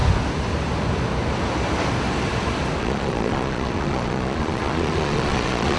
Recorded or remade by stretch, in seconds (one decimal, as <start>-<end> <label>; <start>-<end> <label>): 0.0-2.8 recorded; 2.8-5.8 remade